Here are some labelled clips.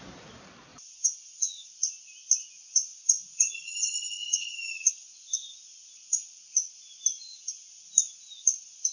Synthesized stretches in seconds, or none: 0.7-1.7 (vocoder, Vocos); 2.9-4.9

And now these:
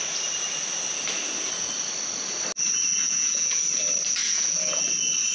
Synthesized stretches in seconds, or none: 3.0-3.6 (vocoder, Vocos); 4.2-4.8

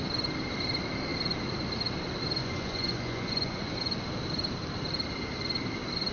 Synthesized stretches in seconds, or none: 2.4-3.7 (vocoder, Vocos)